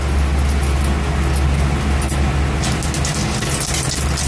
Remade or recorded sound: recorded